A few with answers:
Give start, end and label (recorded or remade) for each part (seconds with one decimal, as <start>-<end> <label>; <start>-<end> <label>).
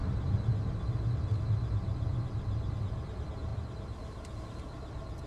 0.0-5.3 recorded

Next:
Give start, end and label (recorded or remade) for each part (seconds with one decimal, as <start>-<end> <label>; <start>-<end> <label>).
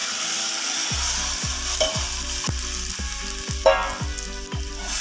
0.0-5.0 recorded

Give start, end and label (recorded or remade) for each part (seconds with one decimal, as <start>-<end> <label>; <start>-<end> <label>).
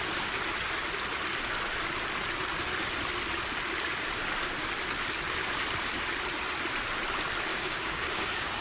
0.0-7.5 recorded; 7.5-8.6 remade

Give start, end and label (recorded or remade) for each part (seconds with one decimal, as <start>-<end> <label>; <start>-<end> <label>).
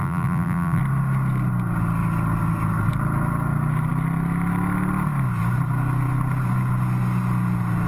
0.0-0.8 remade; 0.8-7.9 recorded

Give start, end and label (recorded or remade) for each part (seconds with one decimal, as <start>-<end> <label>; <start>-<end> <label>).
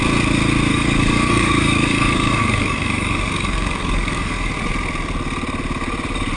0.0-0.7 recorded; 0.7-4.5 remade; 4.5-6.4 recorded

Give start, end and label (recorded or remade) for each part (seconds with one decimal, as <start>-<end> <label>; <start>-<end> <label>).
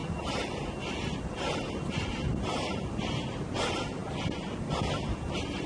0.0-5.7 recorded